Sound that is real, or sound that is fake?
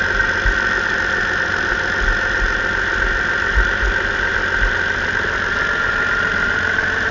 real